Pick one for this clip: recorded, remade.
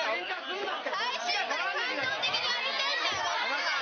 recorded